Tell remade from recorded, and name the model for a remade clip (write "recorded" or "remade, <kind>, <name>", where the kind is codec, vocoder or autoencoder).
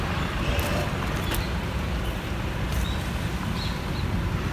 remade, vocoder, BigVGAN v2